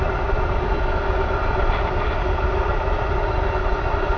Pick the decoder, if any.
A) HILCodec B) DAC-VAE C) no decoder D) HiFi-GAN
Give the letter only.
C